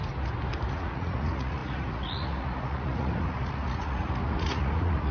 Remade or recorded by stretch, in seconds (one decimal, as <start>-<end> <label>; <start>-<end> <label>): 0.0-0.7 recorded; 0.7-5.1 remade